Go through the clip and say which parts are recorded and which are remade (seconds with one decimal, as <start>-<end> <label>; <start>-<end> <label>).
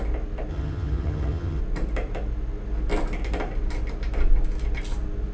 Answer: 0.0-0.5 recorded; 0.5-1.6 remade; 1.6-5.3 recorded